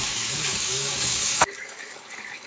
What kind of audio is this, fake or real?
fake